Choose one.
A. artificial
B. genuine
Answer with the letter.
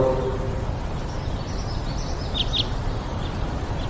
B